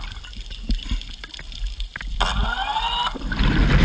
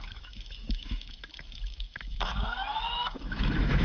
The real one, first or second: first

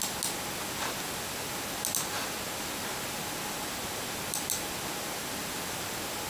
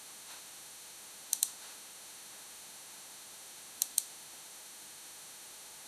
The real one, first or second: first